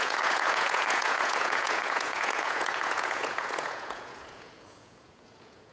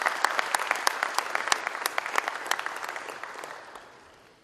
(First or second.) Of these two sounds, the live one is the second